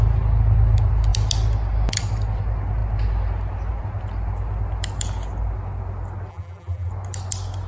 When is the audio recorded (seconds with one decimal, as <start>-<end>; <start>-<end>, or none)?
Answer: 0.0-6.3; 6.9-7.7